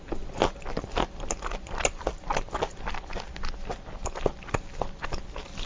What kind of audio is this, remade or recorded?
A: recorded